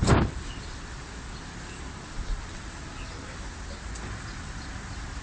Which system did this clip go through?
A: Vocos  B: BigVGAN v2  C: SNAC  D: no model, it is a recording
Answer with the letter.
D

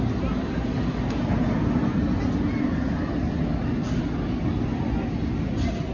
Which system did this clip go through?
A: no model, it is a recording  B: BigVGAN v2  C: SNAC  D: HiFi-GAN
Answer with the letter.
A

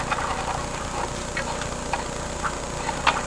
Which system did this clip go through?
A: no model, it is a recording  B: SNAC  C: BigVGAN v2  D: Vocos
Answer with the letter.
A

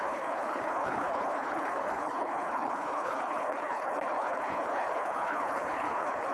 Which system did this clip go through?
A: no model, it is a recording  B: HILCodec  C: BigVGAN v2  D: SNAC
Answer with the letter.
B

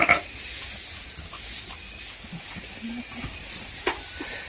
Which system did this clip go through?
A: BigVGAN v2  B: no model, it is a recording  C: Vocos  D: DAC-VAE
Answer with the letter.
B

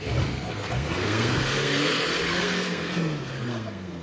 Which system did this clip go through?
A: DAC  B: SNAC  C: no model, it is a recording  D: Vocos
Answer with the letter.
B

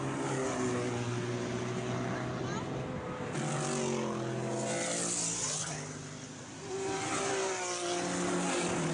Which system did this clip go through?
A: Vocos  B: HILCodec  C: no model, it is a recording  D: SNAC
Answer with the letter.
C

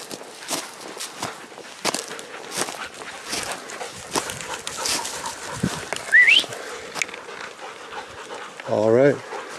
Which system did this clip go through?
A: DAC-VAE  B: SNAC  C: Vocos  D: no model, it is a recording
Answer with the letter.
D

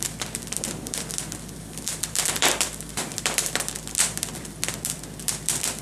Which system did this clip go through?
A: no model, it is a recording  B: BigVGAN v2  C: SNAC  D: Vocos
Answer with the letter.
B